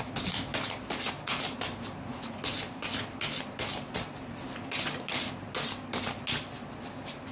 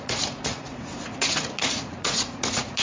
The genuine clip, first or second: first